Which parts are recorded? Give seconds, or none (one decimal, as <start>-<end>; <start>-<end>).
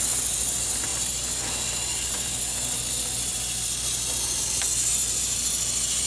0.0-6.1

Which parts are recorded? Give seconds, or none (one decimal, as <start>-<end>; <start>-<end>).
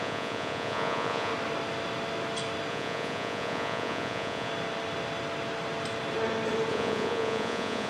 1.3-2.7; 4.5-6.7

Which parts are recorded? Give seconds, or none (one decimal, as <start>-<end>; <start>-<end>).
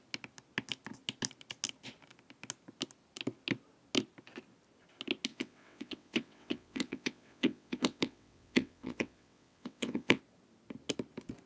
0.0-5.3; 10.2-11.5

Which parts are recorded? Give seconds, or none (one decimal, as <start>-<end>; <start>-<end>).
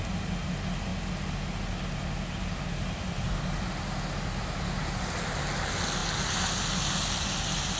0.0-7.8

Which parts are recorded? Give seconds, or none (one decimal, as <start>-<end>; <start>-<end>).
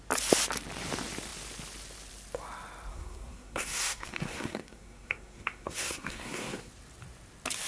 0.0-2.9; 6.7-7.7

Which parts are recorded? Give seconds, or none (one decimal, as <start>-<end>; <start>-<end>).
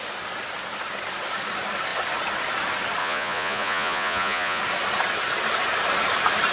0.0-3.0; 4.6-6.5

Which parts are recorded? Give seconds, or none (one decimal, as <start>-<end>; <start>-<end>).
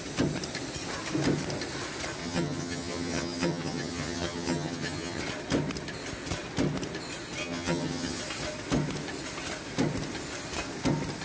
0.0-2.2; 5.2-7.4; 8.2-11.2